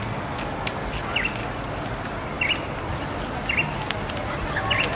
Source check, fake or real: real